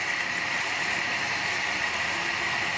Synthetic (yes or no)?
no